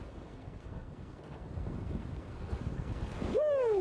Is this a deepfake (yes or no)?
yes